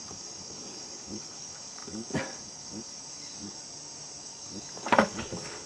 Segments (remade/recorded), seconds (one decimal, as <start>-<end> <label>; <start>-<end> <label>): 0.0-3.6 remade; 3.6-4.2 recorded; 4.2-5.7 remade